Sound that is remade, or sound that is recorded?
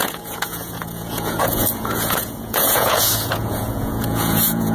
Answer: remade